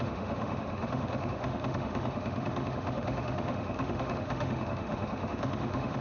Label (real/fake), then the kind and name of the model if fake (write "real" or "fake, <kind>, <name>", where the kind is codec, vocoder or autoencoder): fake, autoencoder, DAC-VAE